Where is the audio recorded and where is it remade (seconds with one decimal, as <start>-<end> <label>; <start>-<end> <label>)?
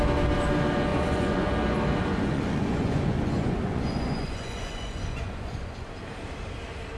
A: 0.0-0.9 recorded; 0.9-1.5 remade; 1.5-2.1 recorded; 2.1-5.9 remade; 5.9-7.0 recorded